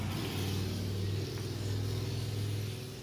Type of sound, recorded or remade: recorded